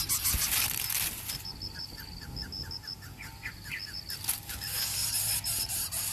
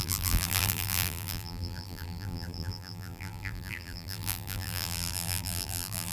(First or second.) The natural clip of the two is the first